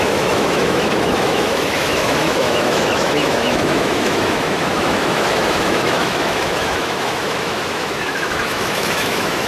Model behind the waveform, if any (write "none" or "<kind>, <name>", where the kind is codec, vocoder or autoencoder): autoencoder, DAC-VAE